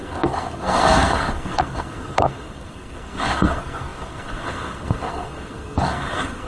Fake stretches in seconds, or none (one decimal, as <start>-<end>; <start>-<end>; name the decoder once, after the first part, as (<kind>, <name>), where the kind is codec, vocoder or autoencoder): 0.0-6.5 (codec, SNAC)